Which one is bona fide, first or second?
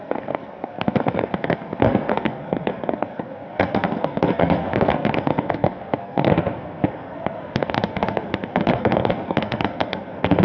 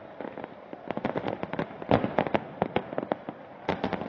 second